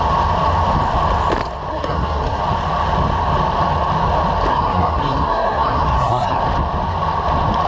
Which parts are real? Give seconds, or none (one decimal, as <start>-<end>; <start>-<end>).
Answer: 0.0-1.7; 2.4-4.5; 6.4-7.7